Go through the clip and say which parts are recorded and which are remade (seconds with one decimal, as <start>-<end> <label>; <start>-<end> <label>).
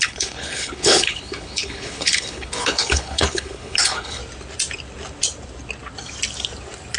0.0-4.2 remade; 4.2-7.0 recorded